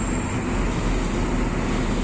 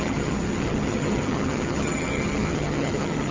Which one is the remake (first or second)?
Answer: second